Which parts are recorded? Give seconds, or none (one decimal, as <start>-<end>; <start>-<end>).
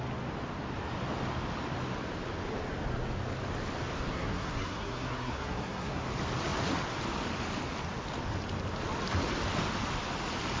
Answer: 0.0-4.1; 6.0-10.6